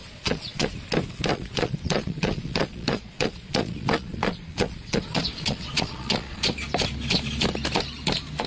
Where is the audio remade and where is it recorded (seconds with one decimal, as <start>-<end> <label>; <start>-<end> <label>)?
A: 0.0-0.7 remade; 0.7-1.3 recorded; 1.3-6.4 remade; 6.4-8.5 recorded